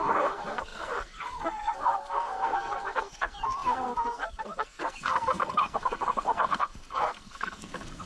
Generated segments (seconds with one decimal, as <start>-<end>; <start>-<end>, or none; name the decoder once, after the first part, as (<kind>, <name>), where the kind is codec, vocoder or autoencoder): 0.0-8.1 (codec, SNAC)